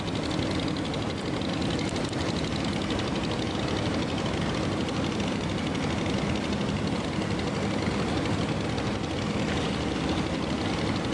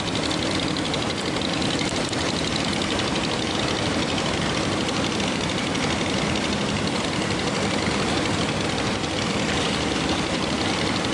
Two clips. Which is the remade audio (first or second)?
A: second